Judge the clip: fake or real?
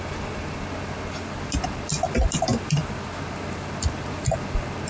real